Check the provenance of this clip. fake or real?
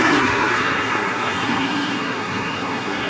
fake